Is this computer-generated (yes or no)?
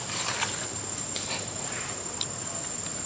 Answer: no